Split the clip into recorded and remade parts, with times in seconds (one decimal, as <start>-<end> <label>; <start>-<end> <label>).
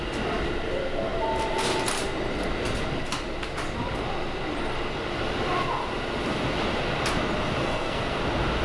0.0-7.6 recorded; 7.6-8.2 remade; 8.2-8.6 recorded